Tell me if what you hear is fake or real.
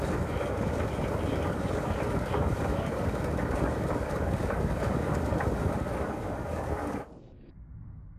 fake